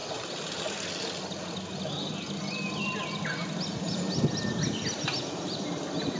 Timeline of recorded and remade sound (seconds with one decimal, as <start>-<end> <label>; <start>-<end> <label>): 0.0-0.9 remade; 0.9-6.2 recorded